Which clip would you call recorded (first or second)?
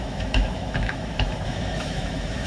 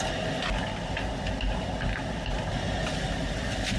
second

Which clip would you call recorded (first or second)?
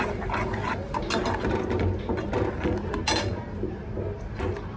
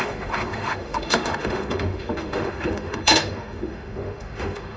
first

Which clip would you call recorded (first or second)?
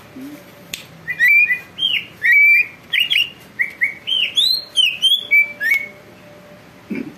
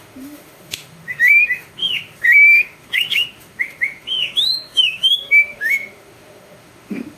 first